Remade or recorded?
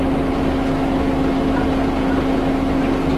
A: recorded